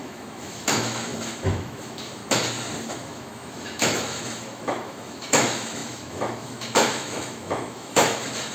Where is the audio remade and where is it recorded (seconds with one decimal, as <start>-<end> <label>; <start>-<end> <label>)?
0.0-2.2 remade; 2.2-2.9 recorded; 2.9-8.5 remade